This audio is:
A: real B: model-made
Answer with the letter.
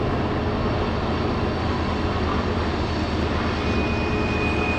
A